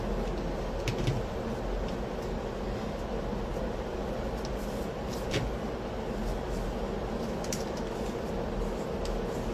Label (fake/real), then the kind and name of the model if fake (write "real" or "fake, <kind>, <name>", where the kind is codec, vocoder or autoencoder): real